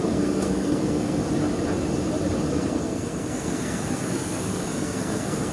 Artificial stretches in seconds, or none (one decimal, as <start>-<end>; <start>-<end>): 0.0-1.2; 2.5-5.5

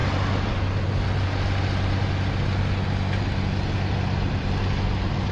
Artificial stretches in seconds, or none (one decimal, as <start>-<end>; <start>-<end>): none

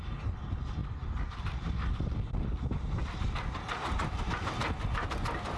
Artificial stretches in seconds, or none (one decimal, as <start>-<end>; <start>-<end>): none

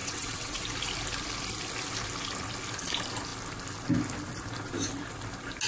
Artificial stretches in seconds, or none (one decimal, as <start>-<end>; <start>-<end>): 0.0-0.6

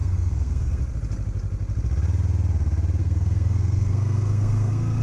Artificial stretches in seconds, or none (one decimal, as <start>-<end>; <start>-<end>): 0.0-0.8; 3.0-5.0

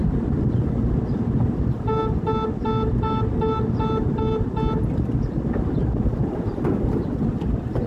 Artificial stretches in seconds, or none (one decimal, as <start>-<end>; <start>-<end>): none

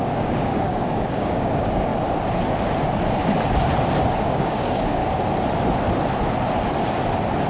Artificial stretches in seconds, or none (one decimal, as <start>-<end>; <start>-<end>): 0.0-1.9; 4.1-5.0

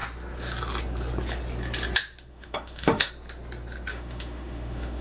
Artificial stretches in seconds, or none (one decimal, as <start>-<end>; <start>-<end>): 2.3-3.1; 3.9-5.0